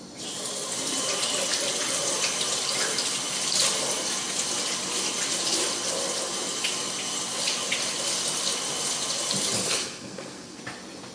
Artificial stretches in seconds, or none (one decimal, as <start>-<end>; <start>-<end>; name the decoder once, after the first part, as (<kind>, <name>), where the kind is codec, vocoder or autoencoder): 9.6-10.6 (codec, SNAC)